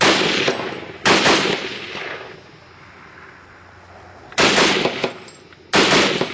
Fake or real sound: real